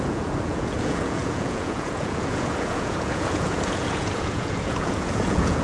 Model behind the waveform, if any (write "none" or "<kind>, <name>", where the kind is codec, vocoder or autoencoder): vocoder, Vocos